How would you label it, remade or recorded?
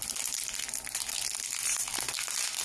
recorded